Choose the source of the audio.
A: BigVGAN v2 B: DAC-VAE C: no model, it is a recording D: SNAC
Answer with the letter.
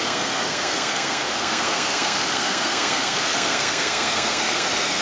D